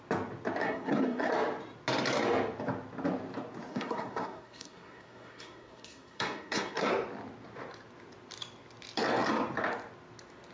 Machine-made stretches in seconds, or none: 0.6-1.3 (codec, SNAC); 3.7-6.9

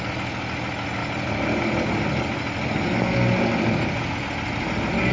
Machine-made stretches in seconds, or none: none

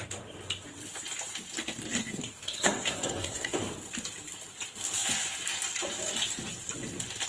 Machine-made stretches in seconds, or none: 2.0-3.6 (codec, SNAC)

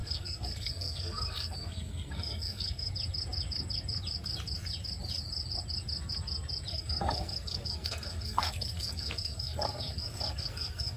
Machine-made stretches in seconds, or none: 0.0-2.9 (codec, SNAC); 6.7-11.0

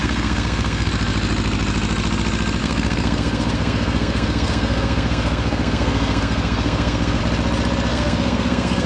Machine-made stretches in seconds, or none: 0.0-0.9 (codec, SNAC); 2.6-7.2; 7.9-8.9

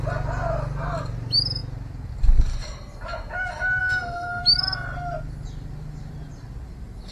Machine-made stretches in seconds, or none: 3.8-4.4 (codec, SNAC)

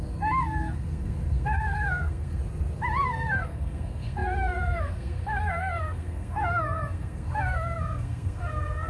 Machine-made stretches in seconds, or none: 0.0-2.4 (codec, SNAC); 3.0-8.9

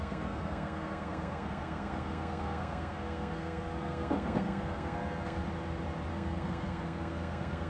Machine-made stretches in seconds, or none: 0.0-5.4 (codec, SNAC); 6.1-7.7